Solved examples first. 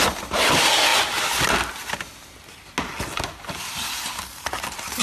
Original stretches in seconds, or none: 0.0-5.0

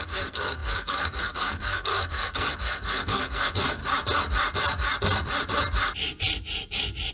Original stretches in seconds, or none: 3.8-7.1

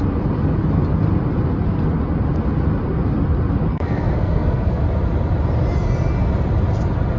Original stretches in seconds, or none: 0.0-3.7; 4.8-7.2